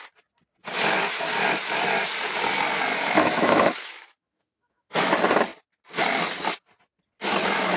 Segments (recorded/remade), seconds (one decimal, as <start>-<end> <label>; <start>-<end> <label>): 0.0-2.9 recorded; 2.9-5.1 remade; 5.1-7.8 recorded

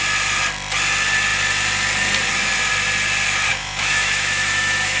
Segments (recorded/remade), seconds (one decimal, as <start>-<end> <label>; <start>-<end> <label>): 0.0-3.5 recorded; 3.5-5.0 remade

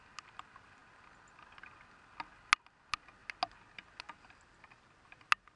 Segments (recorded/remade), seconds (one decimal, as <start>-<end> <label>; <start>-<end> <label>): 0.0-5.6 recorded

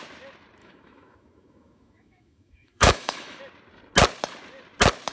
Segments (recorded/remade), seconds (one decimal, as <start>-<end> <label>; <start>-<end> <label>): 0.0-0.6 recorded; 0.6-3.4 remade; 3.4-5.1 recorded

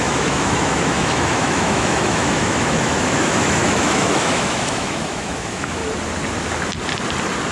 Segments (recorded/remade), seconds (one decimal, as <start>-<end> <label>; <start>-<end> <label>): 0.0-5.8 remade; 5.8-7.5 recorded

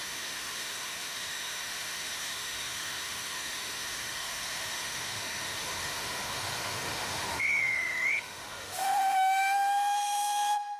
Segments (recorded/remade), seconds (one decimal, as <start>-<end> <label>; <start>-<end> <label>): 0.0-10.8 remade

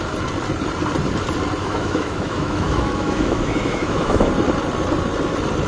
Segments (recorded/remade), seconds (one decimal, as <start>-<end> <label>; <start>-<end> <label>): 0.0-1.6 recorded; 1.6-4.3 remade; 4.3-5.7 recorded